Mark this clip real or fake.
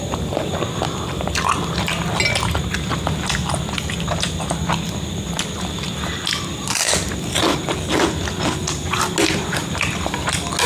real